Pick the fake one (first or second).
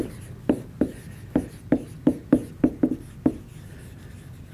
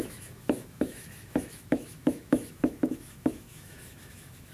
second